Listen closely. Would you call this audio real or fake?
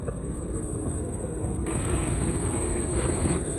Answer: fake